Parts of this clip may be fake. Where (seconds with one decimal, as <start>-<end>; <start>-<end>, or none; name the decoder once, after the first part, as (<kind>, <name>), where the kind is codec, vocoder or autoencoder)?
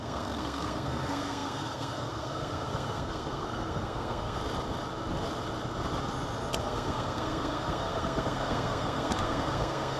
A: 0.0-4.4 (codec, SNAC); 6.6-10.0